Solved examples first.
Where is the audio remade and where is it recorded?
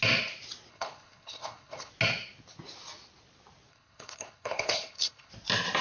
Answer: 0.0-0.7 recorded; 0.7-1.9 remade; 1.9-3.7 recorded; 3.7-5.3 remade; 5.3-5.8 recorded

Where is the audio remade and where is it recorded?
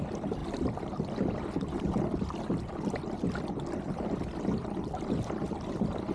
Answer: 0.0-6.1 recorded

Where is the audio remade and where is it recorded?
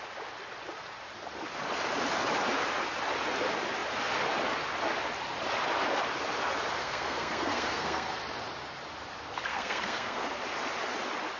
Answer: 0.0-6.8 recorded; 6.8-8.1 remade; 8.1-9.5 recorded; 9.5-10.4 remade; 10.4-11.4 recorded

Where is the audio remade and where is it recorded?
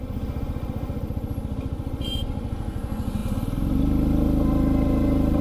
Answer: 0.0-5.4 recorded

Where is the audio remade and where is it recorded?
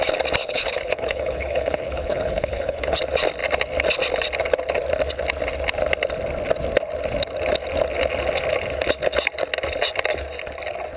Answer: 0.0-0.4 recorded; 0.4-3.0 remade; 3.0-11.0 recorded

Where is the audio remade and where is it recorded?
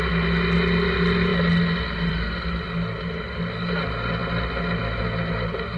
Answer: 0.0-5.8 recorded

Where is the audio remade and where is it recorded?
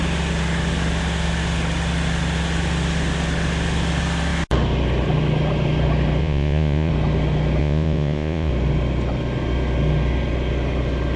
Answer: 0.0-6.2 recorded; 6.2-6.9 remade; 6.9-7.6 recorded; 7.6-8.5 remade; 8.5-11.2 recorded